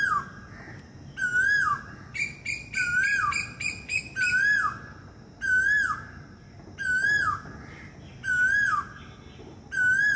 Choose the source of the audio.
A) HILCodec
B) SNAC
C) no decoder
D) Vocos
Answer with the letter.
C